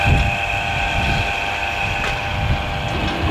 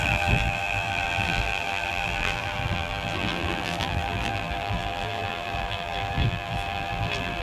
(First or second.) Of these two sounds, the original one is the first